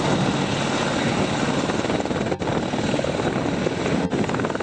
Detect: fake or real real